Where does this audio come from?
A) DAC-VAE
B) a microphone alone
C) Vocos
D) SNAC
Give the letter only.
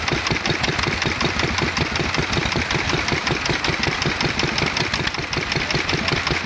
B